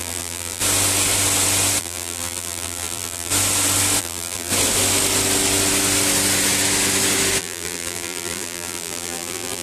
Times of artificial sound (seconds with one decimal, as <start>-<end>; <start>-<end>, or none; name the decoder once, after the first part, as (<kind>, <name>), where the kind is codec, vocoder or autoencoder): 0.0-0.6 (vocoder, BigVGAN v2); 1.8-3.3; 4.0-4.5; 7.4-9.6